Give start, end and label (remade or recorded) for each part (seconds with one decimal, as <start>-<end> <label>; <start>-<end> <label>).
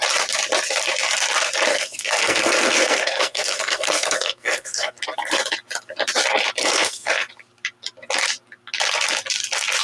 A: 0.0-1.7 recorded; 1.7-5.0 remade; 5.0-6.6 recorded; 6.6-7.3 remade; 7.3-9.8 recorded